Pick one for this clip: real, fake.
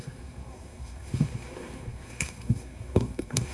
fake